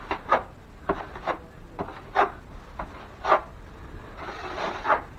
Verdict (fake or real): real